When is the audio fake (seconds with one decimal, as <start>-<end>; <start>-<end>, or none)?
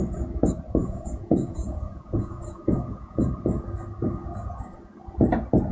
0.8-3.2